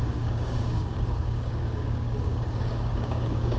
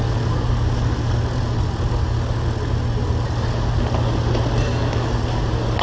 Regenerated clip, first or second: first